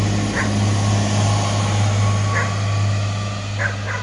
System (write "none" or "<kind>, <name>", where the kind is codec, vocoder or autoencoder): none